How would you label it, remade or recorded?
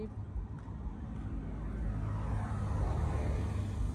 recorded